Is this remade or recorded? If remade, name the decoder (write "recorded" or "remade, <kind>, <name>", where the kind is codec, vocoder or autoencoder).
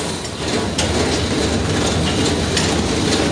recorded